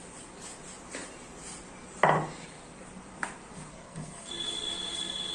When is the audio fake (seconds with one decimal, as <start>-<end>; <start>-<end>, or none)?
3.7-4.3